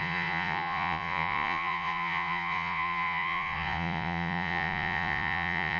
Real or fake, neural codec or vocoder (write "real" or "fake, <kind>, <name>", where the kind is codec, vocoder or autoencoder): fake, vocoder, Vocos